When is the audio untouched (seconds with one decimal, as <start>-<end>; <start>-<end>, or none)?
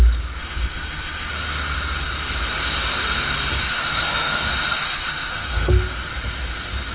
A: 0.0-0.4; 1.3-3.6; 5.7-6.9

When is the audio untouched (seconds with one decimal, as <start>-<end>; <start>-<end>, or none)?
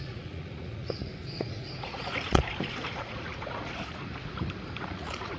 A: 4.1-4.8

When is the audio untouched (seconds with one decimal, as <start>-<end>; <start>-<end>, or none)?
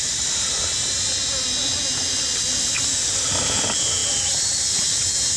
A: 0.0-5.4